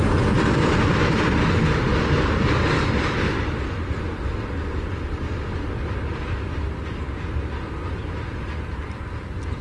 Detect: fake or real real